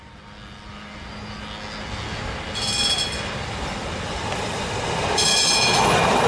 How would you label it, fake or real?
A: real